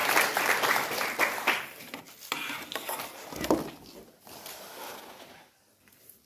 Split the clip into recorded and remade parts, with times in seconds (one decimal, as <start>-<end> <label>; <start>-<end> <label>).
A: 0.0-6.3 recorded